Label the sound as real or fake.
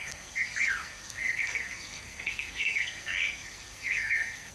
fake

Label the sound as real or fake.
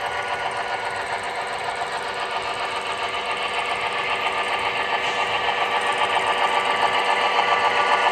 real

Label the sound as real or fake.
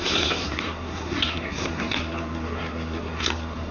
fake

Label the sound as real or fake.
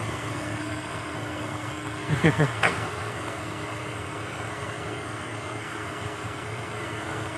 fake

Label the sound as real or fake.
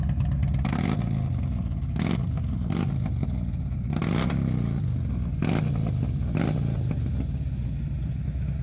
real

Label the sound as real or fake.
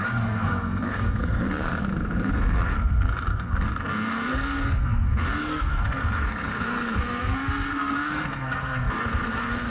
fake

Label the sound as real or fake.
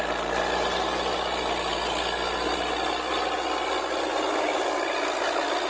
real